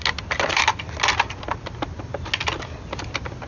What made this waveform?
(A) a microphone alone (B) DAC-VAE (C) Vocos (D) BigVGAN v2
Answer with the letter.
A